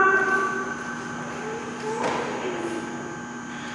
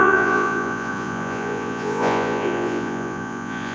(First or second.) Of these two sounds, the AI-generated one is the second